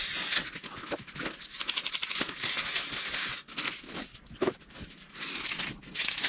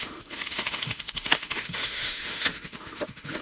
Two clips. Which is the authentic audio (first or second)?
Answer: first